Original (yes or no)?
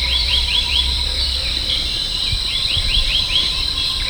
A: no